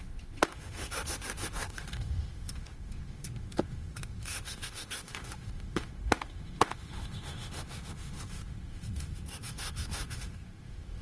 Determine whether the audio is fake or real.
fake